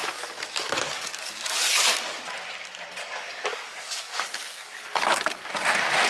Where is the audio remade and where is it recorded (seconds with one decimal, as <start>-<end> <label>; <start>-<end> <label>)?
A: 0.0-1.8 remade; 1.8-3.0 recorded; 3.0-5.5 remade; 5.5-6.1 recorded